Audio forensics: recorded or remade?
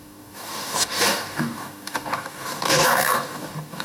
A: remade